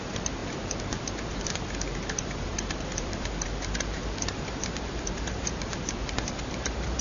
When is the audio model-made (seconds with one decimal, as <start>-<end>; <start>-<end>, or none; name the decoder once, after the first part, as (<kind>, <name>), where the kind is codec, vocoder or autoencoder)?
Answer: 0.0-0.4 (vocoder, BigVGAN v2); 1.0-7.0